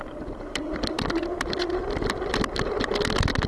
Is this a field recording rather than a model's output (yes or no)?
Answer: no